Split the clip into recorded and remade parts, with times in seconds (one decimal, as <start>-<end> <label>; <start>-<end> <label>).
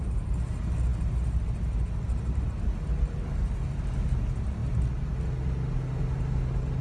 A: 0.0-6.8 recorded